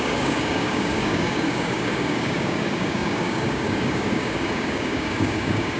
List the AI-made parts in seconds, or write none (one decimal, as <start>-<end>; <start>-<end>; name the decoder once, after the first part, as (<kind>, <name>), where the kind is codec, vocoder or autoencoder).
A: 0.0-5.8 (codec, DAC)